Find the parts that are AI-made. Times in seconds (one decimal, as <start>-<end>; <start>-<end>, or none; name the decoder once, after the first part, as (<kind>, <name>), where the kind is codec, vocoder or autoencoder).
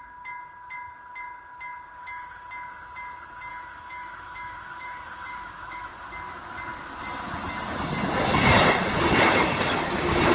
2.0-2.5 (autoencoder, DAC-VAE); 3.5-5.9